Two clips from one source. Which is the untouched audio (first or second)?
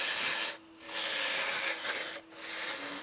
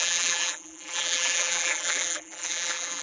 first